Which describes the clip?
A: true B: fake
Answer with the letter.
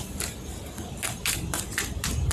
A